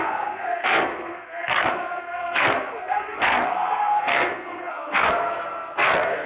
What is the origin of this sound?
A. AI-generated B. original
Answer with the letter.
A